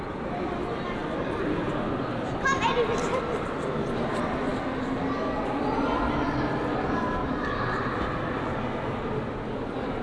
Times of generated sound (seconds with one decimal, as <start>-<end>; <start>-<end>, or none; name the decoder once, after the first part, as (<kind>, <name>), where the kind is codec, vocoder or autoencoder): none